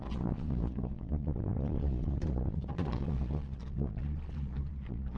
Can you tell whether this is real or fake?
fake